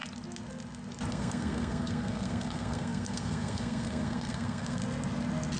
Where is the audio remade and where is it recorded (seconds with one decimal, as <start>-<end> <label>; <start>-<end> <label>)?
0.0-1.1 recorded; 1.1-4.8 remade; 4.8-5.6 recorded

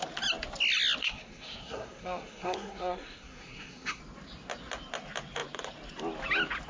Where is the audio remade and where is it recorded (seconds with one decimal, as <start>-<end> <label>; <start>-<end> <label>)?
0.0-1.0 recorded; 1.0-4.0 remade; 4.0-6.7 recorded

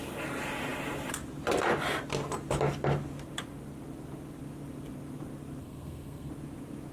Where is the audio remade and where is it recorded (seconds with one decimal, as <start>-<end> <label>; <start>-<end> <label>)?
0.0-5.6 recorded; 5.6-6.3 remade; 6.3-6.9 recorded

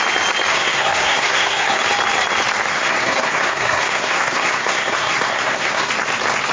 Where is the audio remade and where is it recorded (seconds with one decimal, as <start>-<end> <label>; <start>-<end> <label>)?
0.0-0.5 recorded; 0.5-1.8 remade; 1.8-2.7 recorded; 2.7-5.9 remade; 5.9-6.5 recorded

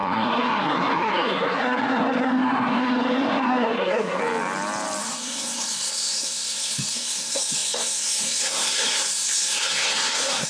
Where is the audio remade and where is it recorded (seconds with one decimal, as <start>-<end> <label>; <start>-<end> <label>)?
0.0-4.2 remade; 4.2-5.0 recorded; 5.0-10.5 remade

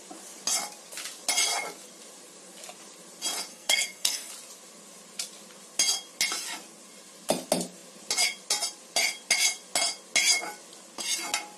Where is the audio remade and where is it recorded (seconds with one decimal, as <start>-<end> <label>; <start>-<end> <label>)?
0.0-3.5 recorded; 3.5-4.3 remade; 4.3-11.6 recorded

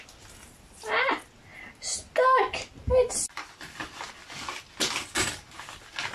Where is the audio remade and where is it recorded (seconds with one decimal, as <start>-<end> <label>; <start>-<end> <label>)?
0.0-6.1 recorded

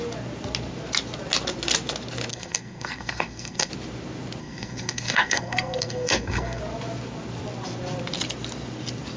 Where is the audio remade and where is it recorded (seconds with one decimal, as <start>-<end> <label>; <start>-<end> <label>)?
0.0-2.3 recorded; 2.3-3.7 remade; 3.7-4.4 recorded; 4.4-6.6 remade; 6.6-9.2 recorded